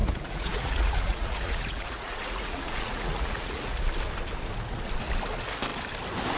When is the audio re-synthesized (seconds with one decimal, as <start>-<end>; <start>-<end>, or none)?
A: 0.0-3.8